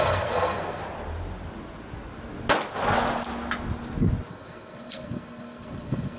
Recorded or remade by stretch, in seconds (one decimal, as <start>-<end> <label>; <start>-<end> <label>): 0.0-0.8 remade; 0.8-4.3 recorded; 4.3-6.2 remade